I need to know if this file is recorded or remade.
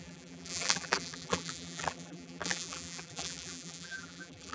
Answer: remade